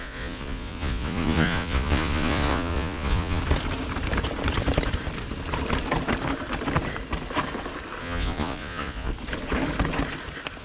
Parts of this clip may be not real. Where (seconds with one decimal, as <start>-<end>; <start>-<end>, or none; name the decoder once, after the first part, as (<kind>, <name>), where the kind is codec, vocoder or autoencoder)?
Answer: 0.0-3.4 (vocoder, Vocos); 8.0-9.1